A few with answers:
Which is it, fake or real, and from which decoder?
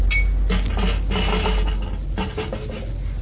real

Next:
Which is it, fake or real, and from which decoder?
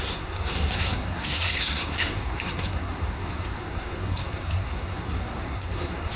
fake, codec, SNAC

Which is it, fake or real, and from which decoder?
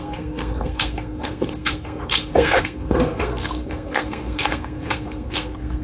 fake, codec, SNAC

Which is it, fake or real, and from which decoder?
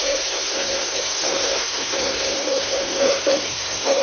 fake, codec, SNAC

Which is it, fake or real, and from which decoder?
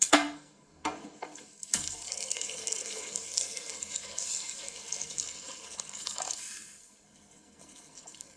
fake, codec, SNAC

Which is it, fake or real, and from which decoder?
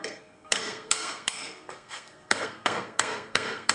fake, codec, SNAC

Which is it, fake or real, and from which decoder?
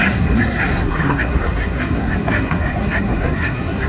fake, codec, SNAC